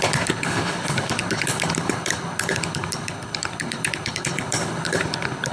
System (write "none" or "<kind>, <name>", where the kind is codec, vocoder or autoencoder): codec, HILCodec